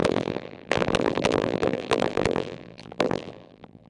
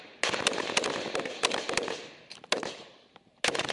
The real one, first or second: second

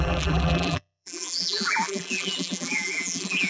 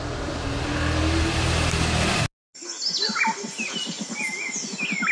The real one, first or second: second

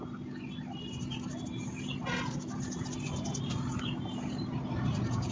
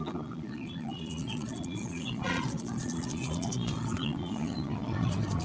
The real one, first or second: first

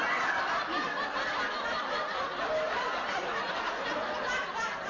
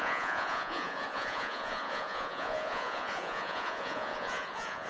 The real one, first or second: first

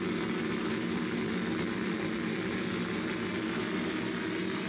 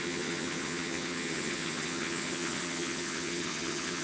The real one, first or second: first